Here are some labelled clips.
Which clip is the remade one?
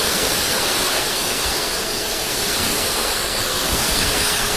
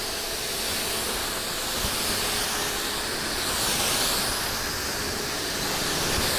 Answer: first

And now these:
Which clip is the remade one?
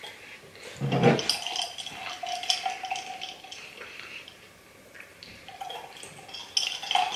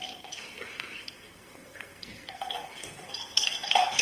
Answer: second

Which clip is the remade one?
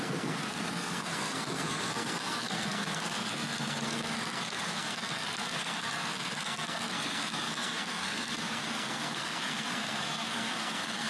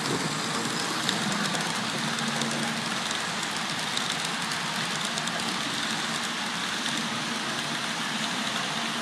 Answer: first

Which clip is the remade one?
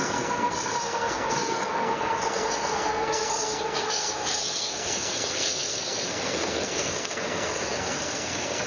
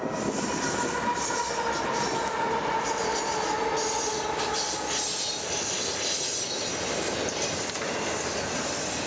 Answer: first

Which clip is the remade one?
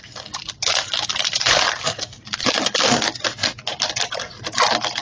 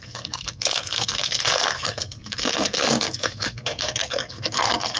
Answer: second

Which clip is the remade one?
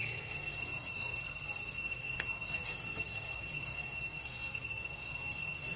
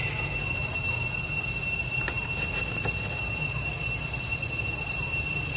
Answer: first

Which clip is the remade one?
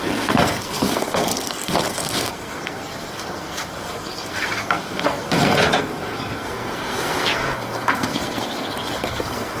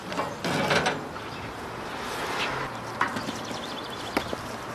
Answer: first